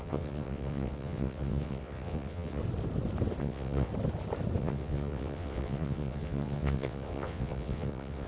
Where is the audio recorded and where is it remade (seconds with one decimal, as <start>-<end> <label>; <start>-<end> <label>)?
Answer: 0.0-2.6 remade; 2.6-3.4 recorded; 3.4-3.9 remade; 3.9-4.6 recorded; 4.6-8.3 remade